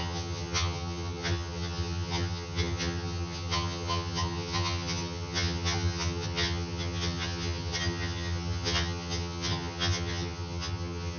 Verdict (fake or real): fake